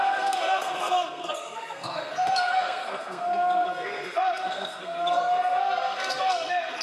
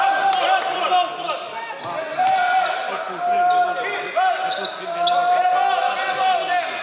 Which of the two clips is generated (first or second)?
first